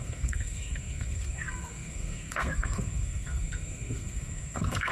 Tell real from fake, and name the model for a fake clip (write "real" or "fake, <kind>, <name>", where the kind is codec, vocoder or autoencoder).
fake, codec, SNAC